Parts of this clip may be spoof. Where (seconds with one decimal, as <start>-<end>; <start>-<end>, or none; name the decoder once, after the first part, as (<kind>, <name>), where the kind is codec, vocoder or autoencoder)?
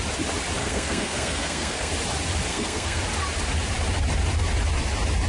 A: 0.6-1.9 (codec, SNAC); 2.5-3.0